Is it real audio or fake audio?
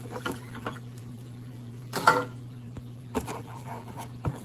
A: fake